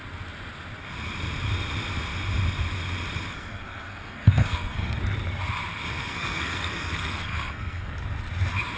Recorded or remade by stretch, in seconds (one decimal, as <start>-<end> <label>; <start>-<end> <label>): 0.0-3.3 recorded; 3.3-5.0 remade; 5.0-5.9 recorded; 5.9-7.9 remade; 7.9-8.8 recorded